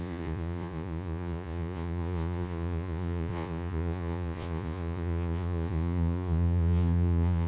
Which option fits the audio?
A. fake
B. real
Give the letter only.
A